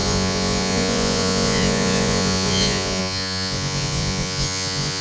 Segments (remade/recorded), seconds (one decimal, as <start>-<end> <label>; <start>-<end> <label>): 0.0-5.0 remade